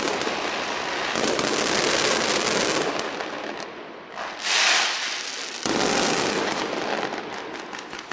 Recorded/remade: recorded